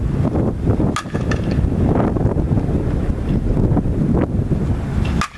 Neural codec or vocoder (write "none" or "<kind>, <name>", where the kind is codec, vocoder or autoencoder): none